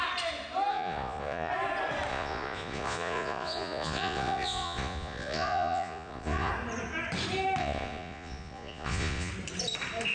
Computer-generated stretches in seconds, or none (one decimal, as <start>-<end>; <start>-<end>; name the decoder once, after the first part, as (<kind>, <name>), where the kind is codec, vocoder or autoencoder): 0.7-1.5 (vocoder, Vocos); 2.1-6.5; 7.6-9.3